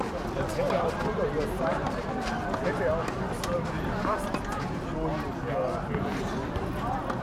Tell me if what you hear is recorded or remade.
recorded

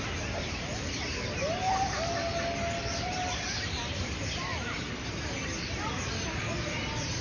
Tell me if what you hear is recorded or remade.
recorded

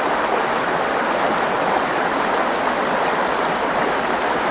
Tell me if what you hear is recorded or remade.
recorded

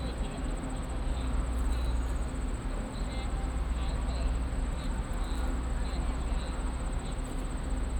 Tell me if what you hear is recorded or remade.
recorded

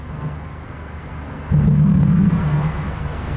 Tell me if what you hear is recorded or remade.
remade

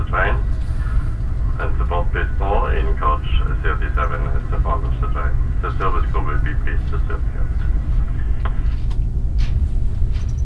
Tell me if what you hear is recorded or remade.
recorded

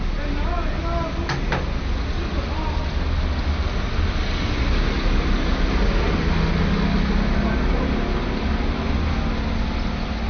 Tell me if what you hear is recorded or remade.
recorded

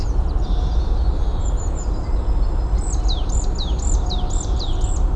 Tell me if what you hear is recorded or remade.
recorded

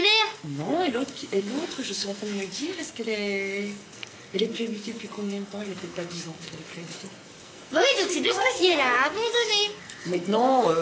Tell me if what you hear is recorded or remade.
remade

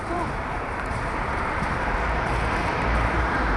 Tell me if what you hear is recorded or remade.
remade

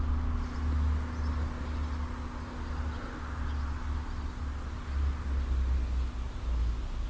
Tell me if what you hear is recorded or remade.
recorded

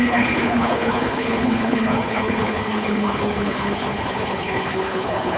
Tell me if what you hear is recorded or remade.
remade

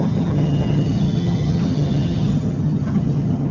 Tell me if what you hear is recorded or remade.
remade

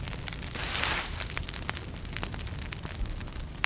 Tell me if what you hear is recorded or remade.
recorded